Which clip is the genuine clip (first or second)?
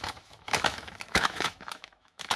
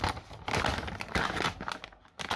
second